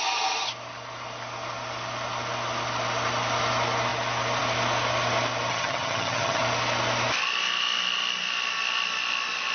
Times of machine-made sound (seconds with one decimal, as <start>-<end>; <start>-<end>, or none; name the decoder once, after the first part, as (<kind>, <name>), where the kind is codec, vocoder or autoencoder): 5.5-6.4 (vocoder, HiFi-GAN)